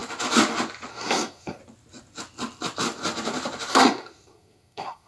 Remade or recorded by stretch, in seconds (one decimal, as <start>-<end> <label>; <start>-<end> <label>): 0.0-0.9 recorded; 0.9-1.6 remade; 1.6-3.7 recorded; 3.7-5.1 remade